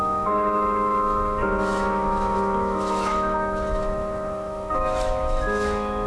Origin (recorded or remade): remade